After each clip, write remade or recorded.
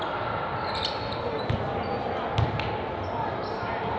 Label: recorded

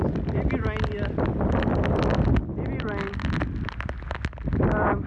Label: recorded